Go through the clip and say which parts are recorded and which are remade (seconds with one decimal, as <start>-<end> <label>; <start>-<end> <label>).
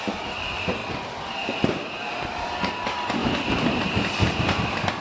0.0-0.8 remade; 0.8-1.3 recorded; 1.3-5.0 remade